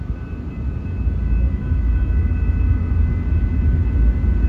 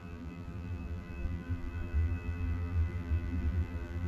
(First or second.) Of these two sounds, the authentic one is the first